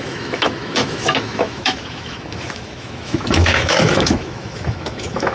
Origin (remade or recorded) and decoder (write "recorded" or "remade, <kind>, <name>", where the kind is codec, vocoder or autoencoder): remade, autoencoder, DAC-VAE